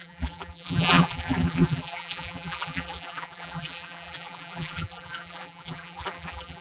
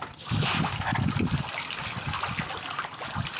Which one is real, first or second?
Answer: second